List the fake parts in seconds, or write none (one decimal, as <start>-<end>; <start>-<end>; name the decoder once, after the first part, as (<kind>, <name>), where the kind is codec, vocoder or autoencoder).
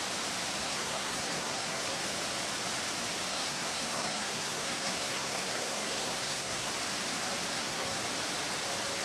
0.6-2.0 (codec, SNAC); 3.3-6.7; 7.5-8.0